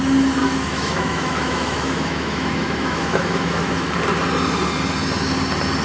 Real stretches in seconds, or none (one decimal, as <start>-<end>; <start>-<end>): 0.0-0.4; 3.9-5.8